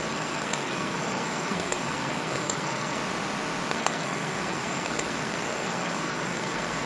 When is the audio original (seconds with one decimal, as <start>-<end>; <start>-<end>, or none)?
3.0-3.7